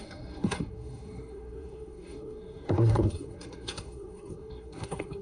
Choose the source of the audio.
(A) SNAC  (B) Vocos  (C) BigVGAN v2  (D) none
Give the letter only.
A